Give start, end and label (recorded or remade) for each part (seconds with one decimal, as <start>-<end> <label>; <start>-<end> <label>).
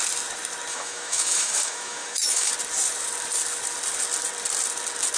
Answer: 0.0-0.7 recorded; 0.7-2.5 remade; 2.5-5.2 recorded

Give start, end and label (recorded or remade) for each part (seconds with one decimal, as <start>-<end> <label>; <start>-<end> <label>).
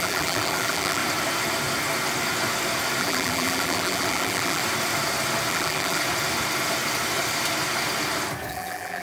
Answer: 0.0-1.0 remade; 1.0-3.0 recorded; 3.0-4.6 remade; 4.6-5.5 recorded; 5.5-6.0 remade; 6.0-8.5 recorded; 8.5-9.0 remade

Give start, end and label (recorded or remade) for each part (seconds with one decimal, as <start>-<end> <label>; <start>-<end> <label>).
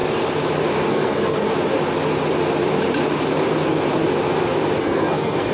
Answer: 0.0-0.9 recorded; 0.9-1.5 remade; 1.5-4.8 recorded; 4.8-5.5 remade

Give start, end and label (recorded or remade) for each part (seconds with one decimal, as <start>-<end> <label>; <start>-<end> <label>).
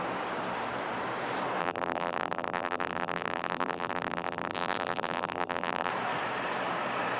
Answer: 0.0-1.6 recorded; 1.6-5.9 remade; 5.9-7.2 recorded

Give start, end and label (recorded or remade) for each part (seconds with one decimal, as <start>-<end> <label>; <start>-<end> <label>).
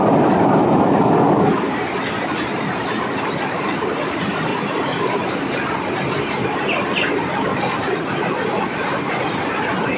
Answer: 0.0-10.0 recorded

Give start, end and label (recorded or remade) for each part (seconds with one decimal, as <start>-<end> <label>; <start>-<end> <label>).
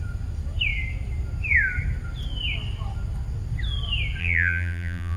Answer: 0.0-4.2 recorded; 4.2-5.2 remade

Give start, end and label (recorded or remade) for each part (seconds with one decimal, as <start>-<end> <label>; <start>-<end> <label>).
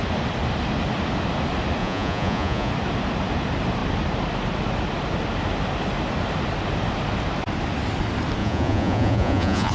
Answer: 0.0-1.8 recorded; 1.8-2.7 remade; 2.7-8.4 recorded; 8.4-9.7 remade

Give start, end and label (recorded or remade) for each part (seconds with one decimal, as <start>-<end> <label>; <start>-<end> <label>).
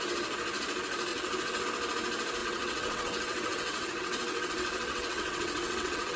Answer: 0.0-1.1 recorded; 1.1-1.6 remade; 1.6-2.4 recorded; 2.4-6.2 remade